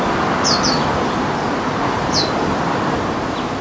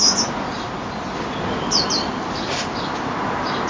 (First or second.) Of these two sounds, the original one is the second